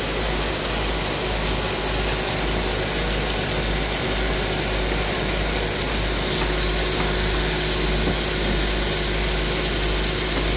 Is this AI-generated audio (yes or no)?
no